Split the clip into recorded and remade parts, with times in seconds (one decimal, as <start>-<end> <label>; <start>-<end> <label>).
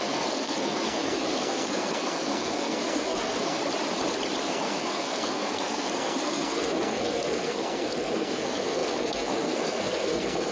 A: 0.0-3.6 remade; 3.6-4.4 recorded; 4.4-10.5 remade